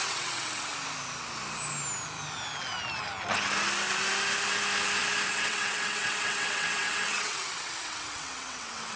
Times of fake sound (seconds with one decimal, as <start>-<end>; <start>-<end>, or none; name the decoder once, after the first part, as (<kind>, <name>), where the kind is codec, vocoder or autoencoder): 0.0-0.7 (vocoder, WaveNeXt); 5.3-9.0